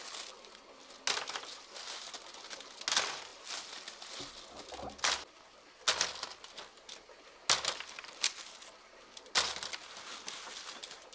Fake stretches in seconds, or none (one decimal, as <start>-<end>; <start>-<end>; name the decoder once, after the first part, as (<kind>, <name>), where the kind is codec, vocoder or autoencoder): none